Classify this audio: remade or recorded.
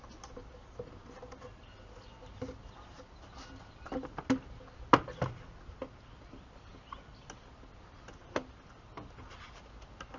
recorded